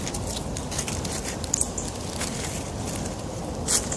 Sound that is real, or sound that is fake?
real